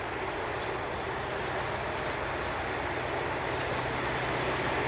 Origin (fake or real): real